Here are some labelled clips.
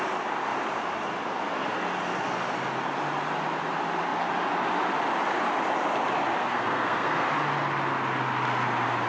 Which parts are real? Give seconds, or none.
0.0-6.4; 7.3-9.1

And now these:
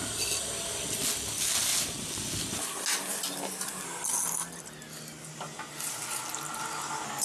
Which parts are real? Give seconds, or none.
0.0-7.2